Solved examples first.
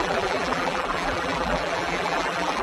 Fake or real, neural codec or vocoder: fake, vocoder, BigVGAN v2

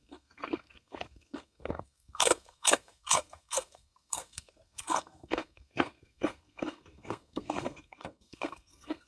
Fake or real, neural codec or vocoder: fake, codec, SNAC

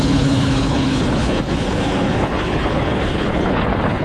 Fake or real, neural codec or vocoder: fake, codec, HILCodec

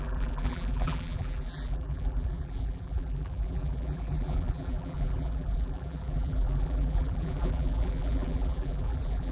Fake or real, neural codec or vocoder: fake, vocoder, BigVGAN v2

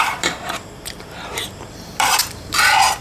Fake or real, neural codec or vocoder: fake, vocoder, BigVGAN v2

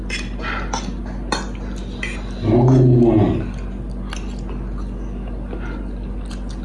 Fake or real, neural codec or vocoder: real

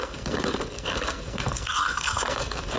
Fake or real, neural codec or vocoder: fake, codec, SNAC